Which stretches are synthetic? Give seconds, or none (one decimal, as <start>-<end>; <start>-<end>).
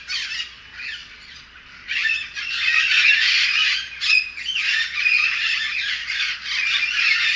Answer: 1.0-3.0; 3.6-6.4